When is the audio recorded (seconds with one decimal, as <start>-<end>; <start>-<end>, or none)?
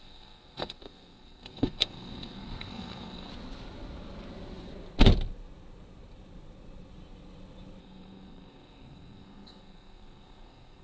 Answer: 3.3-7.8